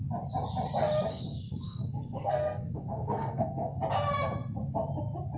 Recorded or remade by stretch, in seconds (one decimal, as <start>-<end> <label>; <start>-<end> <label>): 0.0-1.1 recorded; 1.1-3.8 remade; 3.8-5.4 recorded